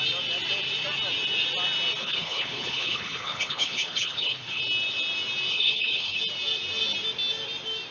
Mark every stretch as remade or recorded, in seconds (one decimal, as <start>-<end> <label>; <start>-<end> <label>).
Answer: 0.0-2.0 recorded; 2.0-4.6 remade; 4.6-5.5 recorded; 5.5-6.2 remade; 6.2-7.9 recorded